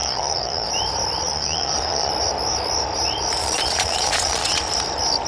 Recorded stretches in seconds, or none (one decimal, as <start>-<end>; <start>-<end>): 0.7-1.3; 2.1-3.4; 4.6-5.3